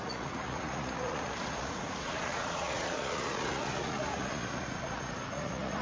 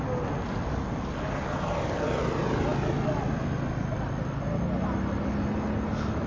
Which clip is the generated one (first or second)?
first